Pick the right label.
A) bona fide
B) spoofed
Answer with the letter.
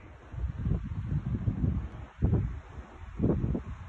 A